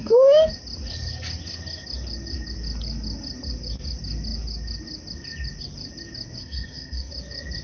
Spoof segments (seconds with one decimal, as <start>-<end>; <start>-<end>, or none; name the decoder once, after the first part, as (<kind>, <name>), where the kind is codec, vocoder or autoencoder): 0.0-0.5 (codec, SNAC); 6.4-7.1